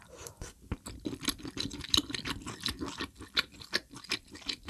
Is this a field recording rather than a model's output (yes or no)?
yes